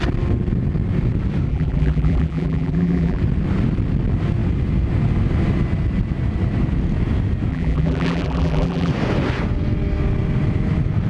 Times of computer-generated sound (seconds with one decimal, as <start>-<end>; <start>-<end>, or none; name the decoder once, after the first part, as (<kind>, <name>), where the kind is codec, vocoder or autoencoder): 1.5-3.2 (vocoder, BigVGAN v2); 7.5-8.9

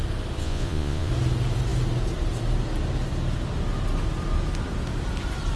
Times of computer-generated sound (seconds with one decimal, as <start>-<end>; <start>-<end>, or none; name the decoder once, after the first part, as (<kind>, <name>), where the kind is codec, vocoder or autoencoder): 0.4-1.1 (vocoder, Vocos)

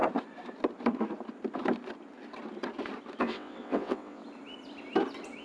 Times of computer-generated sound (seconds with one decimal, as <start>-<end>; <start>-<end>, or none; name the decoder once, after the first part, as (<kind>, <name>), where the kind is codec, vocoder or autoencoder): 3.2-4.2 (vocoder, WaveNeXt)

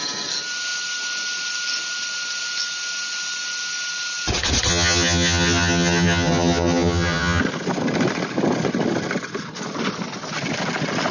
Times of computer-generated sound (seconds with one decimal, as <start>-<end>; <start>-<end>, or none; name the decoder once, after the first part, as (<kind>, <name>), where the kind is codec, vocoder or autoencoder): 4.7-7.4 (vocoder, HiFi-GAN)

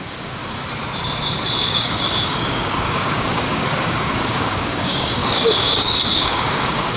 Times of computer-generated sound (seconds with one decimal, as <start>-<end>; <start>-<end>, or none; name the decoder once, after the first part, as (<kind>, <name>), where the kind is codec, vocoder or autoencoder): 0.0-0.4 (codec, DAC); 1.6-7.0

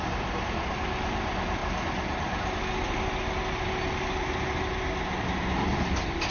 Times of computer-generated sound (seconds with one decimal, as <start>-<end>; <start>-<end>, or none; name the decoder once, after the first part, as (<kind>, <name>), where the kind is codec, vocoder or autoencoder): none